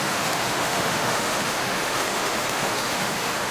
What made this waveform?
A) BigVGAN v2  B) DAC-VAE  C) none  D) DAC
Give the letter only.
B